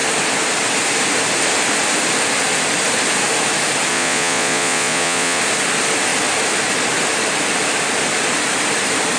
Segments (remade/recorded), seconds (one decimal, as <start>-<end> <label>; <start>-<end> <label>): 0.0-3.9 recorded; 3.9-5.4 remade; 5.4-9.2 recorded